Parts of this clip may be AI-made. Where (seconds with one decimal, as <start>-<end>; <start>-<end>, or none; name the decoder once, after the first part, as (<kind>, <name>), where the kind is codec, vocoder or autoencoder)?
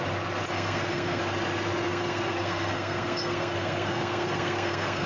0.5-1.2 (codec, SNAC); 1.9-5.1